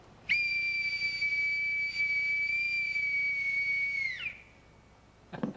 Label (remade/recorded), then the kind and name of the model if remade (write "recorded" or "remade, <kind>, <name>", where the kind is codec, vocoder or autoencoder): recorded